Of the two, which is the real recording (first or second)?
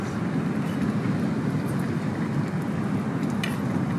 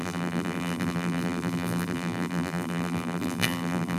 first